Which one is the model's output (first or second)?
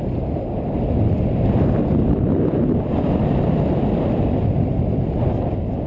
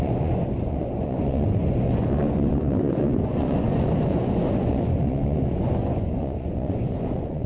second